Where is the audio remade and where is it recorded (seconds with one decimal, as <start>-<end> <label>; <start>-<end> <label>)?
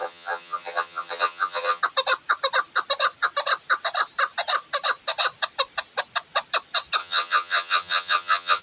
0.0-1.8 remade; 1.8-7.0 recorded; 7.0-8.6 remade